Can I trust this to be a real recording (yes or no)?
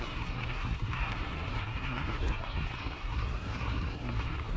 no